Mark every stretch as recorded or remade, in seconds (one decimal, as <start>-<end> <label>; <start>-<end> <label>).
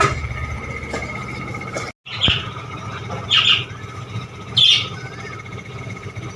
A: 0.0-6.4 recorded